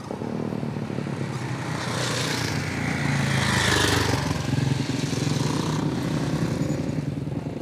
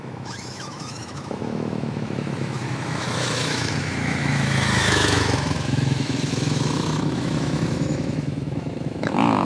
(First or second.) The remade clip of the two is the second